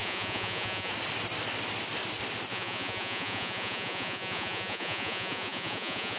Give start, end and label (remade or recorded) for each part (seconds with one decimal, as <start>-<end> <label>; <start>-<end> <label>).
0.0-0.9 remade; 0.9-2.5 recorded; 2.5-6.2 remade